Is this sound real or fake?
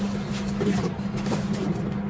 real